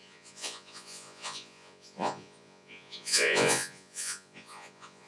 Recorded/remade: remade